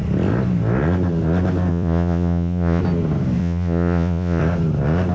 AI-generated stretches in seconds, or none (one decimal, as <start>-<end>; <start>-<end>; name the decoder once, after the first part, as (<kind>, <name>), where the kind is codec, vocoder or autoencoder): 1.7-2.8 (vocoder, Vocos); 3.4-4.4